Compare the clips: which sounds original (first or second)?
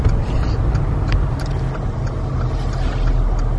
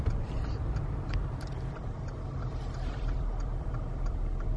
first